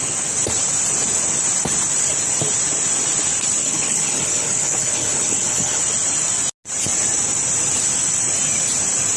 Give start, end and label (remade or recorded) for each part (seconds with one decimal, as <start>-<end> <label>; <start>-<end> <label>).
0.0-3.6 recorded; 3.6-5.8 remade; 5.8-9.2 recorded